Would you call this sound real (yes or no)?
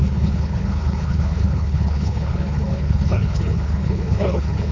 no